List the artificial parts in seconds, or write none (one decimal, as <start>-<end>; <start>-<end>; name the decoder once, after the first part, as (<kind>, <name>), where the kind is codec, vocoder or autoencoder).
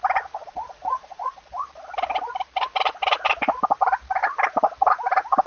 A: 0.4-1.5 (vocoder, Vocos)